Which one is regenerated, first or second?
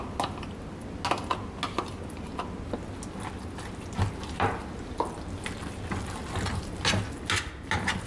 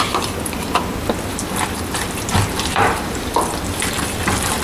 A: second